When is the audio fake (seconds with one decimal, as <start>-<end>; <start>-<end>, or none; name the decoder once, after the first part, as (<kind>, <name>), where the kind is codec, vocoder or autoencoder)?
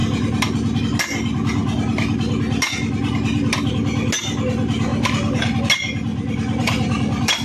4.9-5.6 (vocoder, BigVGAN v2); 6.1-7.4